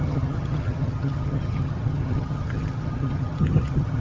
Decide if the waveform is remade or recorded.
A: remade